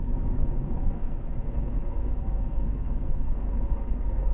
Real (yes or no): no